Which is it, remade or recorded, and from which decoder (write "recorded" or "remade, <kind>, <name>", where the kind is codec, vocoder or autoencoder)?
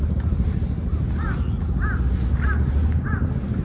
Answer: recorded